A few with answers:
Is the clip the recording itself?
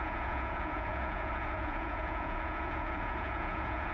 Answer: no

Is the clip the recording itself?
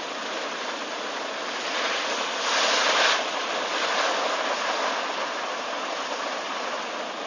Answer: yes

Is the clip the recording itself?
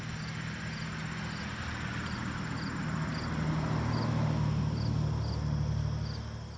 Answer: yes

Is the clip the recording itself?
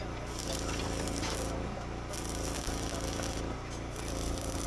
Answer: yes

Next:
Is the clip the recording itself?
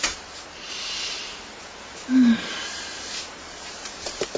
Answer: no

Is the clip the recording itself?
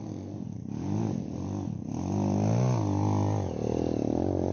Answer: yes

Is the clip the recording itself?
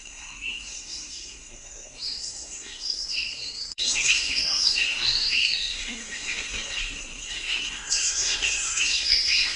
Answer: no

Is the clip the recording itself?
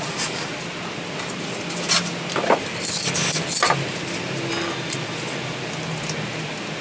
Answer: yes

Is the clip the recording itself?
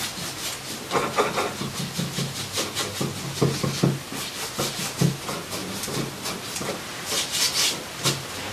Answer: yes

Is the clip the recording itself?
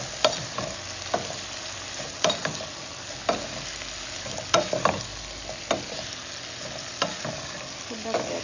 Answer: yes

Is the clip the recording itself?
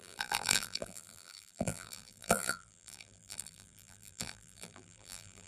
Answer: no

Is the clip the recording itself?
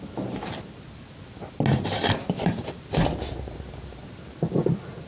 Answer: yes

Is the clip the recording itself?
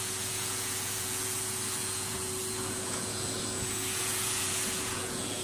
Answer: no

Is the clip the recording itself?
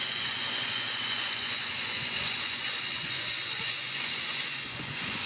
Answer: no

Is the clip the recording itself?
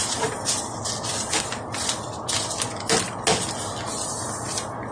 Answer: yes